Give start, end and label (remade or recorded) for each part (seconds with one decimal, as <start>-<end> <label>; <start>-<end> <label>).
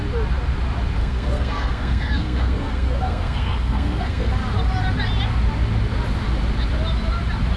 0.0-1.0 recorded; 1.0-4.3 remade; 4.3-7.6 recorded